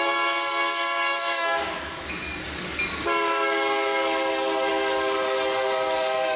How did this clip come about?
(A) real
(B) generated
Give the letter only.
B